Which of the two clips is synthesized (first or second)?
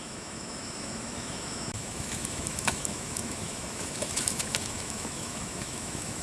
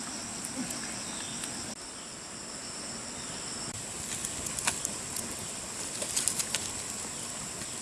first